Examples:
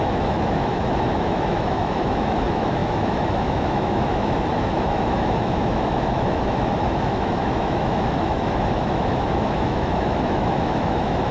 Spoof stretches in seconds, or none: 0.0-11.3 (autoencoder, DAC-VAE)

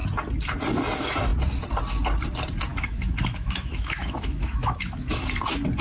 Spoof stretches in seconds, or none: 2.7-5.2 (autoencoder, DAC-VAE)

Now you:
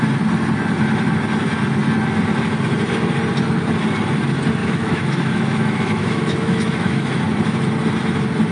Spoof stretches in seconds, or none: 4.6-7.2 (autoencoder, DAC-VAE)